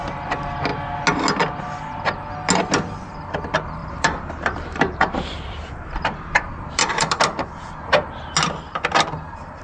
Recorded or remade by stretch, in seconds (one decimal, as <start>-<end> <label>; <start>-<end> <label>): 0.0-3.8 recorded; 3.8-7.2 remade; 7.2-9.6 recorded